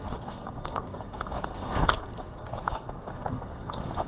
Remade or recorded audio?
remade